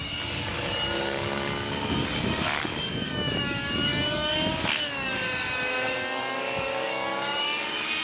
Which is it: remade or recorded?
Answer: remade